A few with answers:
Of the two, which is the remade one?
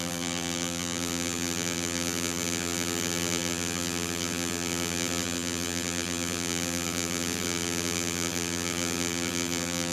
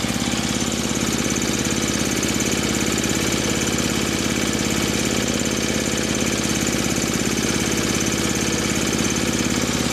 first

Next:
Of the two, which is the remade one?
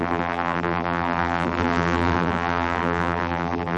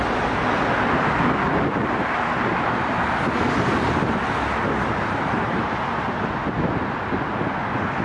first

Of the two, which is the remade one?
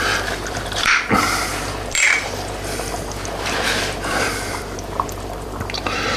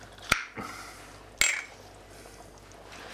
first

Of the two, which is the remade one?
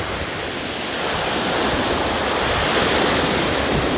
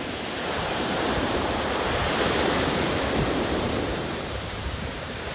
second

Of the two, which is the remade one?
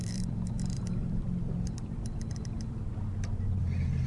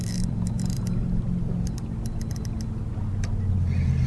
first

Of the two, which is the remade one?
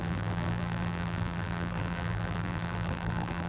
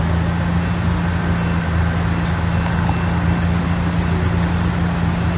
first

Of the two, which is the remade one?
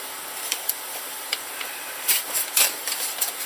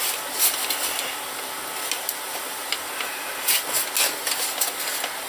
first